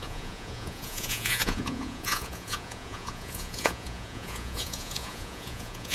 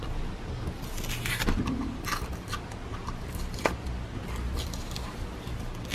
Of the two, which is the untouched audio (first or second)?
second